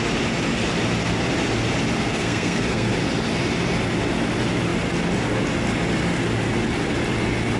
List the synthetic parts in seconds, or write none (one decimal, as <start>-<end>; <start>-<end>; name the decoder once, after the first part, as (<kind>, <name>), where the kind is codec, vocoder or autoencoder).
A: 2.1-2.9 (codec, SNAC)